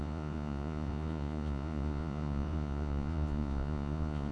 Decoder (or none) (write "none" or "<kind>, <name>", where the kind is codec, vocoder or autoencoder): vocoder, Vocos